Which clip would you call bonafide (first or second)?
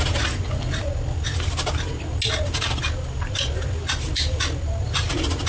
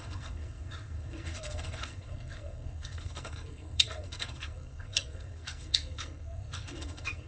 first